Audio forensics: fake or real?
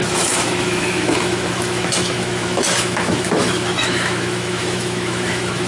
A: fake